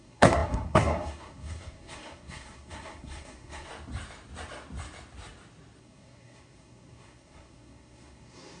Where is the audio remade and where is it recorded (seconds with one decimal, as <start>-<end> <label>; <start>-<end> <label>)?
0.0-3.7 remade; 3.7-5.8 recorded; 5.8-8.6 remade